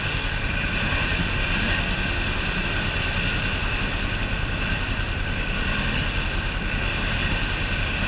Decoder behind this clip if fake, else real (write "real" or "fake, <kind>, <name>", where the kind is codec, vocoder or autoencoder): real